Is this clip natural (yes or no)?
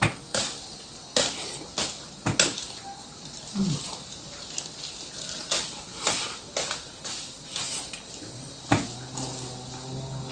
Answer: yes